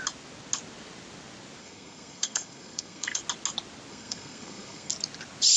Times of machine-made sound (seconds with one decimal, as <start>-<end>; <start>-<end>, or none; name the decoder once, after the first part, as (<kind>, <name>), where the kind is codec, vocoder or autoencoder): 1.6-3.2 (codec, SNAC); 3.9-4.9